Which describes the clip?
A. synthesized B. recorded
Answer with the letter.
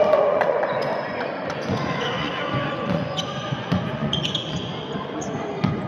A